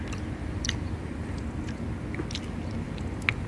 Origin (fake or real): real